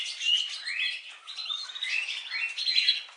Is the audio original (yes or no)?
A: yes